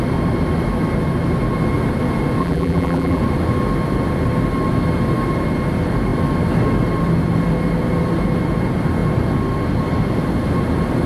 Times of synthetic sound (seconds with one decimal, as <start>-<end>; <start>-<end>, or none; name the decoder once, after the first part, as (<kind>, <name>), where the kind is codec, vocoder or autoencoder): 2.4-3.2 (vocoder, BigVGAN v2)